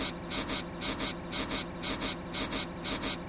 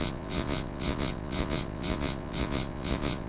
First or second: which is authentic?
first